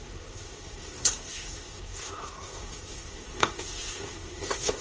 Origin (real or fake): fake